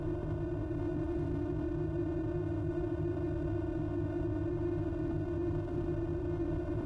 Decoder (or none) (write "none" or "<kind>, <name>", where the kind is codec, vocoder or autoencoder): none